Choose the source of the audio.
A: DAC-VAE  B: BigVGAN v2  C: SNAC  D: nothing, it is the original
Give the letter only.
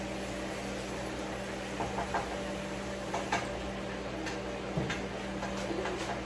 D